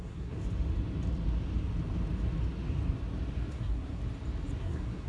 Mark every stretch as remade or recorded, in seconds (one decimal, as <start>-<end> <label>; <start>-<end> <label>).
0.0-0.4 remade; 0.4-3.5 recorded; 3.5-4.0 remade; 4.0-4.6 recorded; 4.6-5.1 remade